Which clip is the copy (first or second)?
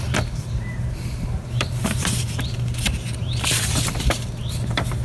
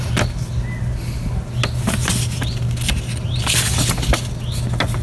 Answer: first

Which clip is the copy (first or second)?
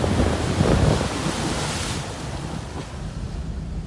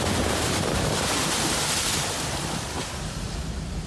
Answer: second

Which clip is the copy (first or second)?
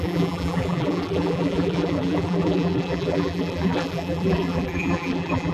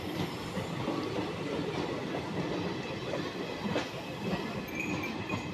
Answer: first